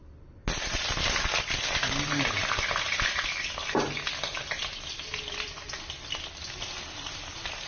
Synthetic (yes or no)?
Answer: no